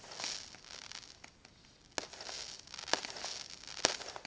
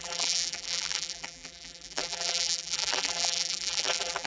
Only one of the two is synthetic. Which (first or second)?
second